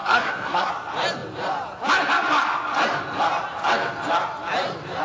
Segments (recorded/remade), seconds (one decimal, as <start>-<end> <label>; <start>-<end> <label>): 0.0-0.7 remade; 0.7-5.0 recorded